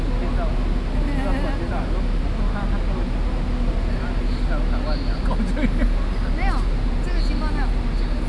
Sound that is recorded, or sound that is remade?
recorded